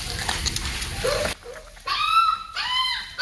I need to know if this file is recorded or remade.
recorded